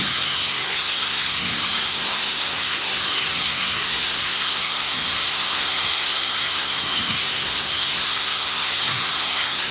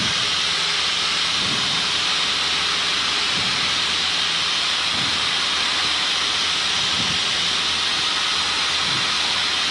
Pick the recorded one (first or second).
second